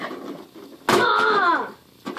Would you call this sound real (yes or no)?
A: yes